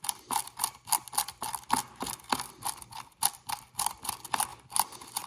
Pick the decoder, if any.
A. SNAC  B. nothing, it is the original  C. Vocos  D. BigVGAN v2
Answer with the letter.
B